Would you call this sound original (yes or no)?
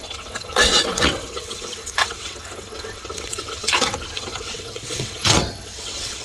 no